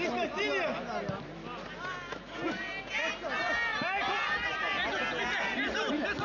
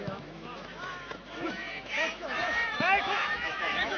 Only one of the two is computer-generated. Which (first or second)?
second